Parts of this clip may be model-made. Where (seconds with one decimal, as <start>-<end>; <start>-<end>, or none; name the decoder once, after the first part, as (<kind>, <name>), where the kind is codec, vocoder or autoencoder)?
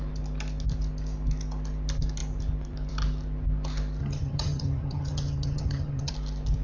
4.0-6.1 (vocoder, HiFi-GAN)